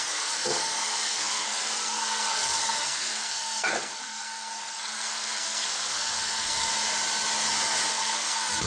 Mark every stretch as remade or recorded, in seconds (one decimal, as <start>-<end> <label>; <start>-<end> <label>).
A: 0.0-6.7 remade; 6.7-7.9 recorded; 7.9-8.7 remade